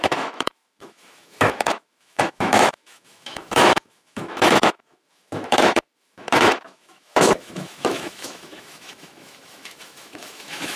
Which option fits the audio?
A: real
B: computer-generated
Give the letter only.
B